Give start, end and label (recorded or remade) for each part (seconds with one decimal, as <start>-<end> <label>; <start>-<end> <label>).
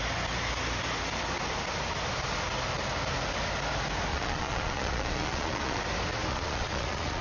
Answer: 0.0-4.1 recorded; 4.1-5.8 remade; 5.8-6.3 recorded; 6.3-7.2 remade